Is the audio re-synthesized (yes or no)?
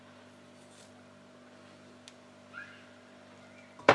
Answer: no